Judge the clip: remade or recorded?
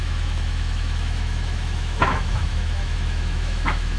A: remade